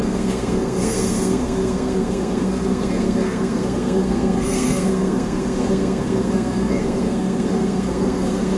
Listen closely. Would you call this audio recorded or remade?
remade